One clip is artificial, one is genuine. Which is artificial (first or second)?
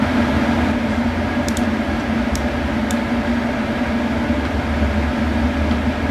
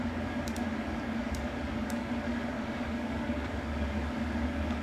second